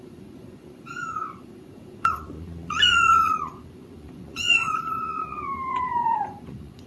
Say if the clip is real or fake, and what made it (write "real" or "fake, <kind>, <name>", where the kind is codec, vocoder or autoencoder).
fake, vocoder, Vocos